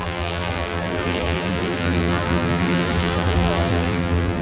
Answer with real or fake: fake